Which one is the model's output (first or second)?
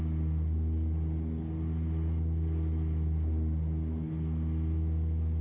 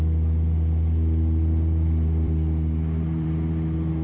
second